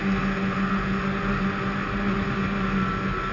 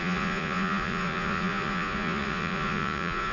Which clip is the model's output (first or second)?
second